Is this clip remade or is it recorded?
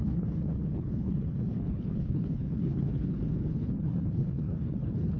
remade